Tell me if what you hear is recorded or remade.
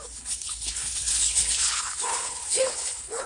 remade